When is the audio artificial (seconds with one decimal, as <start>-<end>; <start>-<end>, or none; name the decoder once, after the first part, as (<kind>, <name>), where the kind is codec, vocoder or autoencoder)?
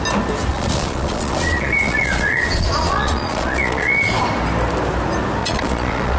0.5-4.1 (vocoder, Vocos); 5.4-6.2